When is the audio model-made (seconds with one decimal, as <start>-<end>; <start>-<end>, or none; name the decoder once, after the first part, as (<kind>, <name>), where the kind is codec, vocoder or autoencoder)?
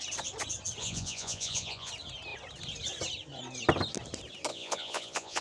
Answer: 0.8-1.9 (vocoder, Vocos); 4.5-5.4